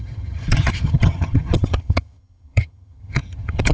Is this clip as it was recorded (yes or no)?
no